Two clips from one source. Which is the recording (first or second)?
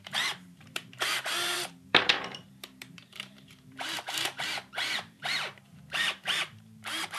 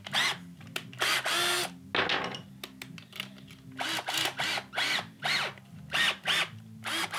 second